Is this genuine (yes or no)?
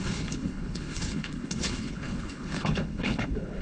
no